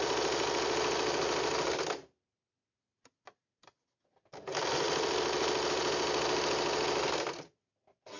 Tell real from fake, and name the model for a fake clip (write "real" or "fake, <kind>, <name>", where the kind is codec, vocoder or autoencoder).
real